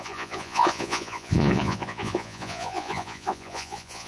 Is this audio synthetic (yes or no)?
yes